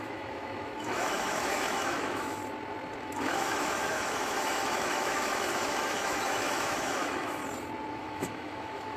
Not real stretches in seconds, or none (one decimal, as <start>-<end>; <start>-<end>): 0.0-2.4; 3.0-7.4; 7.9-9.0